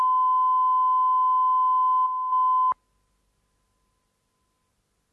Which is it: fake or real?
real